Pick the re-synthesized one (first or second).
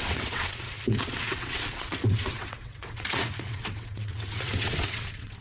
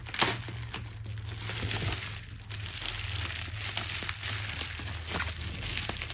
first